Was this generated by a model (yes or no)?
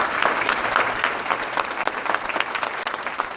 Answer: no